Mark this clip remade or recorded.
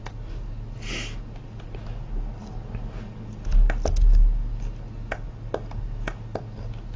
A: recorded